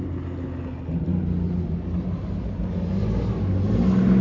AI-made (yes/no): no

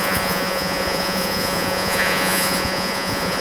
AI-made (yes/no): yes